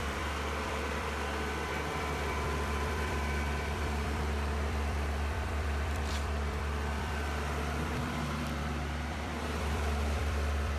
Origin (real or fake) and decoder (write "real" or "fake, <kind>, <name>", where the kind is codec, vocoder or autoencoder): fake, vocoder, BigVGAN v2